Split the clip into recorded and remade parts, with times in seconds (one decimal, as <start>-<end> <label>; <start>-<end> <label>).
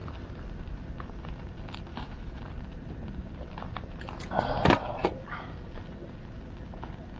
0.0-1.9 recorded; 1.9-2.4 remade; 2.4-7.2 recorded